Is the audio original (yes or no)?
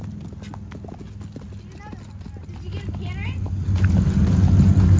yes